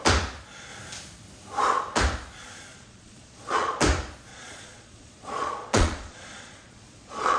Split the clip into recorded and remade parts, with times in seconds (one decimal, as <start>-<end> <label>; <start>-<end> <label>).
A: 0.0-2.7 recorded; 2.7-3.8 remade; 3.8-4.3 recorded; 4.3-7.4 remade